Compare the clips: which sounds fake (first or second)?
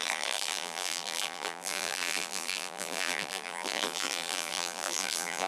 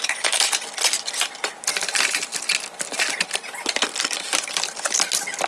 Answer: first